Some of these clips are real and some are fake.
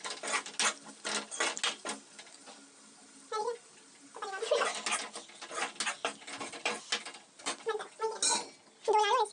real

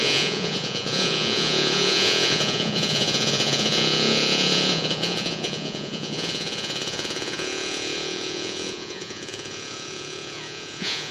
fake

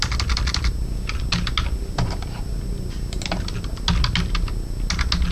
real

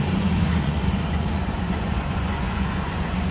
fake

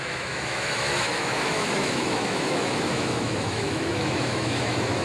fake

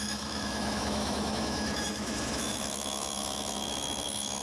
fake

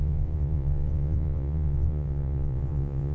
fake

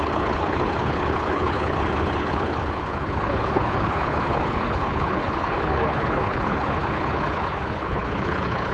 fake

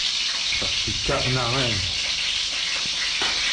real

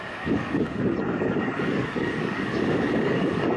fake